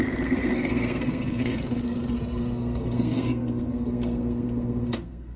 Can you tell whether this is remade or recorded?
remade